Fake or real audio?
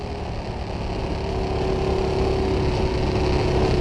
real